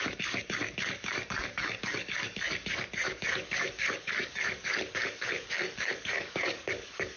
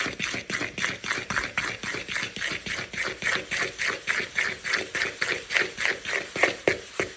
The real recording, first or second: second